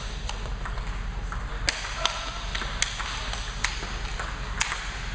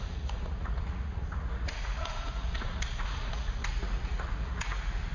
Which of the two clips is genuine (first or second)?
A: first